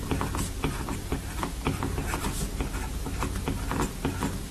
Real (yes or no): yes